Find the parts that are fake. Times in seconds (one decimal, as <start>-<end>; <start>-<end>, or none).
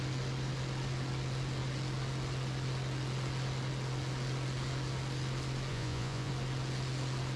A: 5.7-6.3